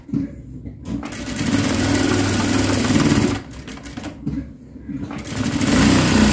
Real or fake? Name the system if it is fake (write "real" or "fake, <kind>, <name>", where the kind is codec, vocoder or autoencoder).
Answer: real